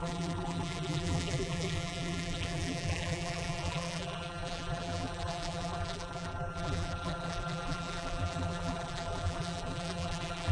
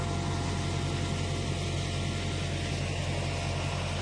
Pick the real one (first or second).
second